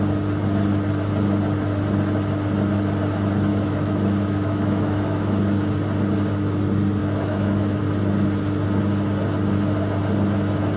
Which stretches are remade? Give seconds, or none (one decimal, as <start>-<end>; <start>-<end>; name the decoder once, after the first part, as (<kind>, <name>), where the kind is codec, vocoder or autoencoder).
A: 3.5-5.7 (autoencoder, DAC-VAE); 7.0-7.8